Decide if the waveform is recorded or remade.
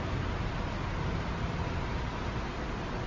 recorded